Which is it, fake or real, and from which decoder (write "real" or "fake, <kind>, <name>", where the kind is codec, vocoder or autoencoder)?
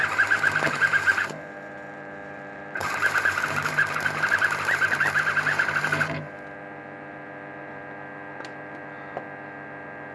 fake, vocoder, BigVGAN v2